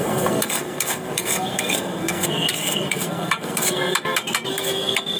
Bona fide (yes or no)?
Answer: no